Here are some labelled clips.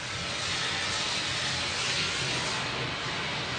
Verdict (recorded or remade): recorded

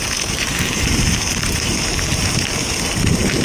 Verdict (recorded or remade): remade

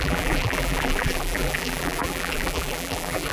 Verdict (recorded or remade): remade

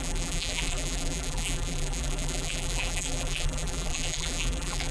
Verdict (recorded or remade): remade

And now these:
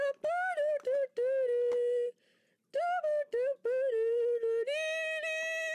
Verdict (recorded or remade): recorded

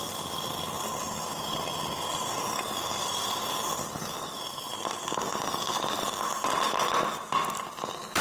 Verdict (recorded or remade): remade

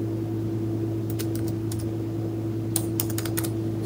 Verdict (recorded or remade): recorded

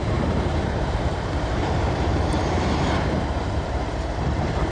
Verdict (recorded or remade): remade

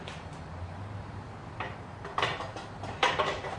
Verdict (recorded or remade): remade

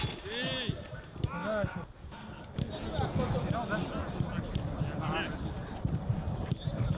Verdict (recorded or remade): recorded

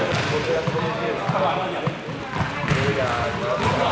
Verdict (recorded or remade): recorded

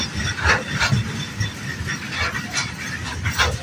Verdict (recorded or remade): recorded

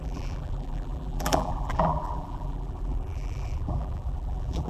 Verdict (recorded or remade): remade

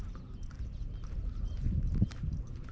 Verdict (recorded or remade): recorded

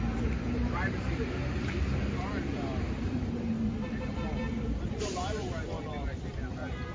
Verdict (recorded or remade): remade